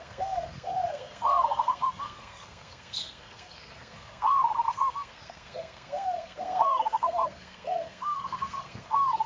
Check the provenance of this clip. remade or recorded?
remade